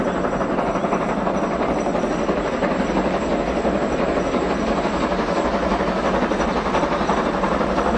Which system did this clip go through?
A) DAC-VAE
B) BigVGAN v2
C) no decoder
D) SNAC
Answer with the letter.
C